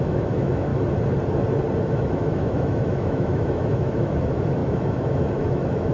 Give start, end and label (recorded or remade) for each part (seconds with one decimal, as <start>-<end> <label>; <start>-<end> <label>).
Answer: 0.0-0.7 remade; 0.7-1.8 recorded; 1.8-5.9 remade